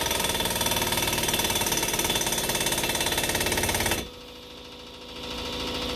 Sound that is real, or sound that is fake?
real